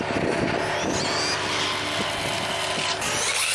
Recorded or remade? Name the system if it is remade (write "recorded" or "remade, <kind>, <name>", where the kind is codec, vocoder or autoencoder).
recorded